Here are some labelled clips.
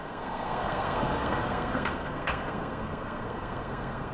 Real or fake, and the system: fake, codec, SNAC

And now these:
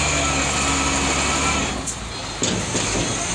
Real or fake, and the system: real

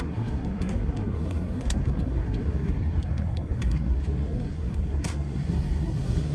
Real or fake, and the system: fake, codec, SNAC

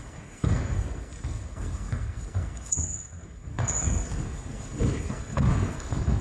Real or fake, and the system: fake, codec, SNAC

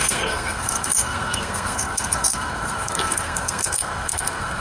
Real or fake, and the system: fake, codec, SNAC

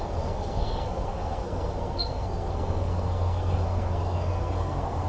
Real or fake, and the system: fake, codec, SNAC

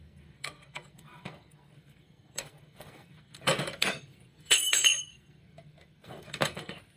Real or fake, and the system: fake, codec, SNAC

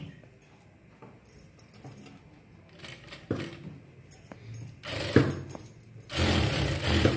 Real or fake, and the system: real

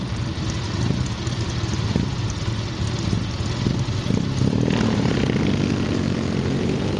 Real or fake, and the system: real